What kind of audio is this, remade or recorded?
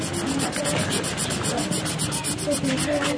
recorded